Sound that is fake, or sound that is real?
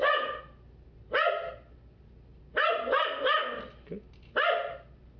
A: real